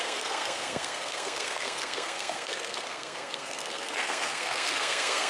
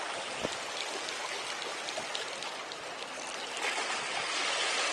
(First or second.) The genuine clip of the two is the second